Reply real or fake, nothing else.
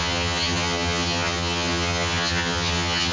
fake